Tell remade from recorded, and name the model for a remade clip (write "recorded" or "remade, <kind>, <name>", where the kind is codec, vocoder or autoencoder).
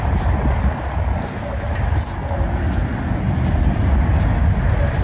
recorded